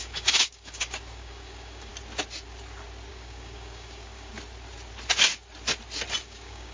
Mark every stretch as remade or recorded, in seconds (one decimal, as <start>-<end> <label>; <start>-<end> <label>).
0.0-1.9 remade; 1.9-3.1 recorded; 3.1-4.3 remade; 4.3-6.2 recorded; 6.2-6.7 remade